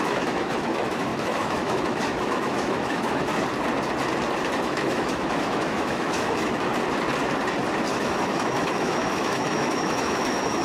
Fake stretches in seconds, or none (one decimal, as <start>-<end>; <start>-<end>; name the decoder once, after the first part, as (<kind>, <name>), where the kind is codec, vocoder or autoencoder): 0.0-3.3 (autoencoder, DAC-VAE); 4.6-6.7; 8.0-10.6